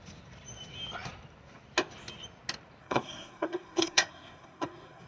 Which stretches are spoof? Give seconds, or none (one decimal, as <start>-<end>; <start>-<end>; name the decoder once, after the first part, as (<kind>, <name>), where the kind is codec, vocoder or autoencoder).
2.8-5.1 (codec, SNAC)